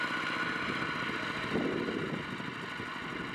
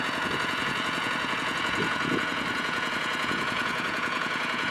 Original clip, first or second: first